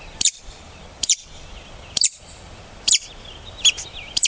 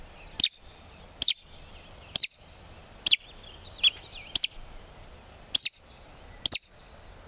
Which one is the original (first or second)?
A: second